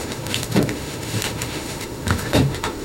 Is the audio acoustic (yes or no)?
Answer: no